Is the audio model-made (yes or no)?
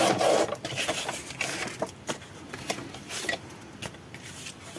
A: no